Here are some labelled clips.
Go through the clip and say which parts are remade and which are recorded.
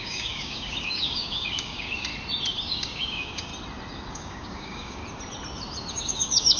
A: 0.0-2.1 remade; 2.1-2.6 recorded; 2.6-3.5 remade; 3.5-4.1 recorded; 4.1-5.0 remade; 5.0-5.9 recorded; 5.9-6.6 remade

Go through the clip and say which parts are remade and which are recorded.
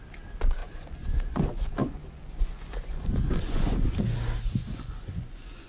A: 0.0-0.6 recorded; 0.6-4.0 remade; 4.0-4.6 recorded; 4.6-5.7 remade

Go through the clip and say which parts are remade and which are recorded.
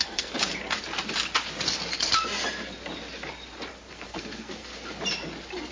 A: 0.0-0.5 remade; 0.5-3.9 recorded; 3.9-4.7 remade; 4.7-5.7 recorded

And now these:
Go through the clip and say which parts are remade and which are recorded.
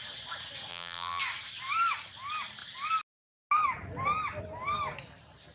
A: 0.0-0.7 recorded; 0.7-1.2 remade; 1.2-5.5 recorded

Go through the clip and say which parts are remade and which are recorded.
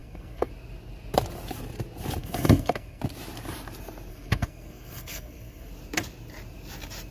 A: 0.0-0.5 remade; 0.5-2.2 recorded; 2.2-3.0 remade; 3.0-4.1 recorded; 4.1-5.7 remade; 5.7-7.1 recorded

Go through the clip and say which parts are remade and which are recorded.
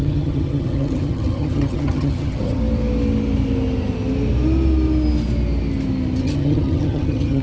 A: 0.0-2.6 remade; 2.6-6.2 recorded; 6.2-7.4 remade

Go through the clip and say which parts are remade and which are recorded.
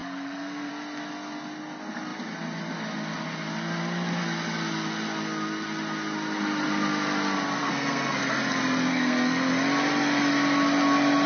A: 0.0-0.7 remade; 0.7-7.6 recorded; 7.6-8.2 remade; 8.2-8.9 recorded; 8.9-9.5 remade; 9.5-11.3 recorded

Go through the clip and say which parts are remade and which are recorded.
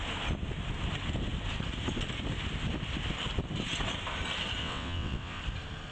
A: 0.0-4.6 recorded; 4.6-5.4 remade; 5.4-5.9 recorded